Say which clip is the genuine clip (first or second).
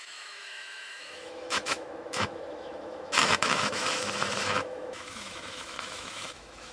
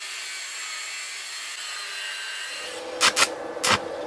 second